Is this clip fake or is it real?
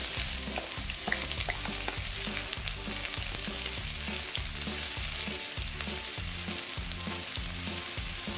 real